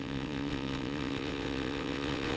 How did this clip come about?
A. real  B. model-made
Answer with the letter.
B